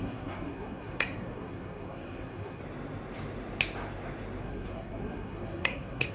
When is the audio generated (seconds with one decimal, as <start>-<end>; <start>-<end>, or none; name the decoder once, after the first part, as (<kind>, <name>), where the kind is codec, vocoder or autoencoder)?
0.0-2.6 (codec, SNAC); 4.4-6.1